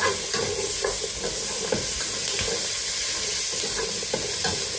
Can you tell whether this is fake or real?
real